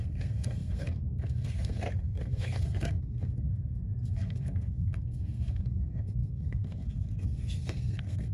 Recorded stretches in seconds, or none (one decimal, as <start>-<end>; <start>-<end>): none